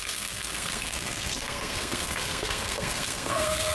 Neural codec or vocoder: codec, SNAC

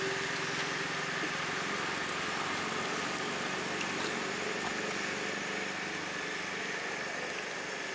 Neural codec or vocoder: none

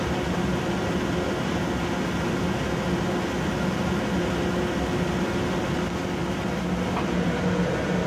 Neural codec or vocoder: none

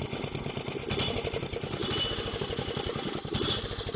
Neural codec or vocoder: none